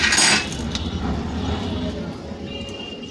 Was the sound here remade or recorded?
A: recorded